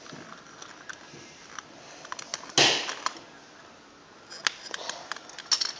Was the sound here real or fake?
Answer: real